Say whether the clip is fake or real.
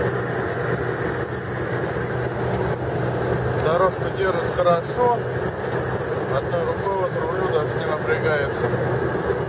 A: real